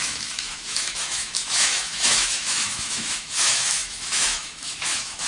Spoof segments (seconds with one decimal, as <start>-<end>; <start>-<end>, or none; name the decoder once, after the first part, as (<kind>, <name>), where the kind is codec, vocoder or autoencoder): 0.0-5.3 (autoencoder, DAC-VAE)